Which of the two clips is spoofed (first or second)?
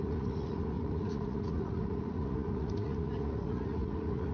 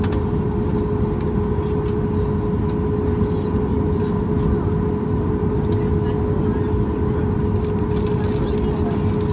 first